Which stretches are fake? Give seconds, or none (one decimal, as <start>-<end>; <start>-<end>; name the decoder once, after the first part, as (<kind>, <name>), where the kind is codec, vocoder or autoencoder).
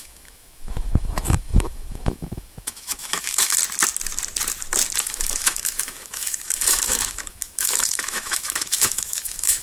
0.0-3.6 (autoencoder, DAC-VAE); 5.0-9.6